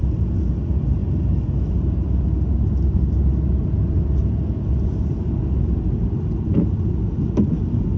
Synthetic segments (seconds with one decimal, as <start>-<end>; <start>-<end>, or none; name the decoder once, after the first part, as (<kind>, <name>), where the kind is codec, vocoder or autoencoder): none